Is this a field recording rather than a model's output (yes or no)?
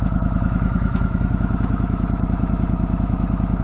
no